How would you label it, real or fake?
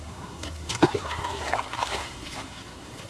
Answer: fake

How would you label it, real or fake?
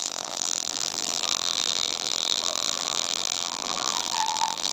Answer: fake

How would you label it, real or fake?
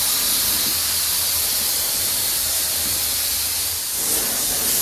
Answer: real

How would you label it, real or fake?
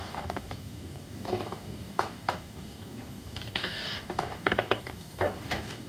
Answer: fake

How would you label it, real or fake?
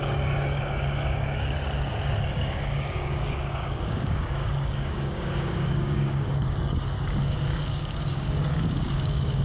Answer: fake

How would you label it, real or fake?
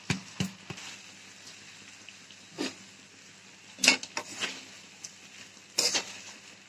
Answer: real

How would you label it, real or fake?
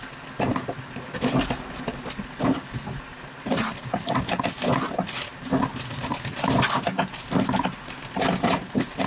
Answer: real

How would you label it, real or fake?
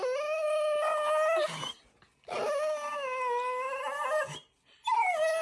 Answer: real